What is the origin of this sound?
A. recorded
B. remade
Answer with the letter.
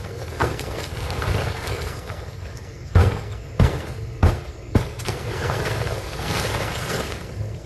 B